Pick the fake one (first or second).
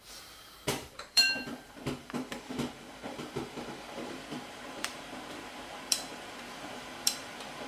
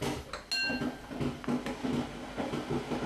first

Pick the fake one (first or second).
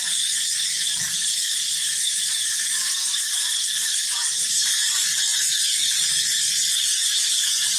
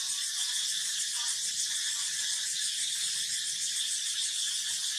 first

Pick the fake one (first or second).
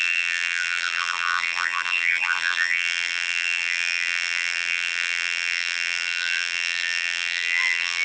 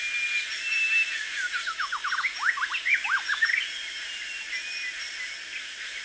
first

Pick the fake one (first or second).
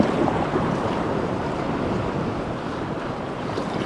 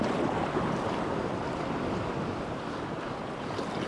first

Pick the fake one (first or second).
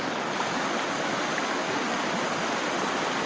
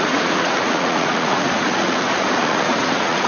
second